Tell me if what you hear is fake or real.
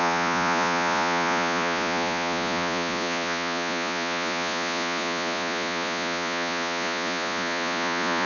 fake